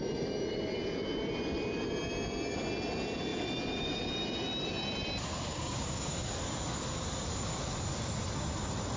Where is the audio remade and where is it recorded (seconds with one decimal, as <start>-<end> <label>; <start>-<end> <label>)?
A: 0.0-5.5 recorded; 5.5-6.3 remade; 6.3-9.0 recorded

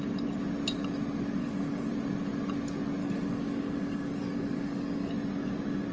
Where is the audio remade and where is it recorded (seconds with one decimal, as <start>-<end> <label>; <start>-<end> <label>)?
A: 0.0-1.4 recorded; 1.4-1.9 remade; 1.9-3.0 recorded; 3.0-5.1 remade; 5.1-5.9 recorded

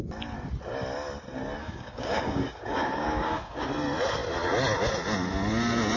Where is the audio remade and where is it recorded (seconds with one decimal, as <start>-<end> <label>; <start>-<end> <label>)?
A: 0.0-1.6 recorded; 1.6-3.7 remade; 3.7-6.0 recorded

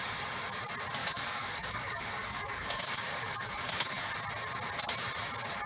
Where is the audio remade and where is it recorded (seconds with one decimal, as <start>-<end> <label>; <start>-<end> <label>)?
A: 0.0-1.0 recorded; 1.0-4.1 remade; 4.1-5.7 recorded